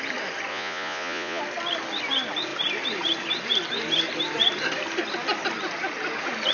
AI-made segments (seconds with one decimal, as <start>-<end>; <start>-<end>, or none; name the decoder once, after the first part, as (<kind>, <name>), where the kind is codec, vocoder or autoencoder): 0.5-1.4 (vocoder, Vocos)

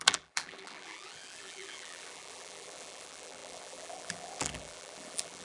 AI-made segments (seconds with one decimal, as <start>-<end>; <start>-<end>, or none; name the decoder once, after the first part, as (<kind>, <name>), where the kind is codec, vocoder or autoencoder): 0.0-5.4 (vocoder, BigVGAN v2)

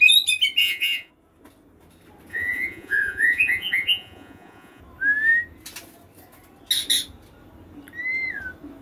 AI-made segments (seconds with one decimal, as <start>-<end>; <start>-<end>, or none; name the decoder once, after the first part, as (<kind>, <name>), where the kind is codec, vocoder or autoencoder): 0.6-1.1 (vocoder, Vocos); 2.3-4.8

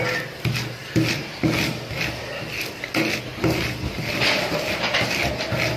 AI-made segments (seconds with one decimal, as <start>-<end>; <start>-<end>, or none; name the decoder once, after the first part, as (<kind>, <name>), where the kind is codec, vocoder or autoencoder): none

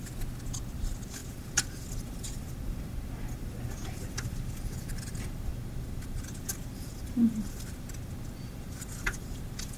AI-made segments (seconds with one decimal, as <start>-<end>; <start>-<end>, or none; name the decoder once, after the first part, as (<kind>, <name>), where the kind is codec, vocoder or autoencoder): none